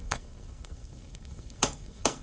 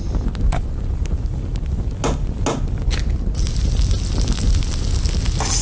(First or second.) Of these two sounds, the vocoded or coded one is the first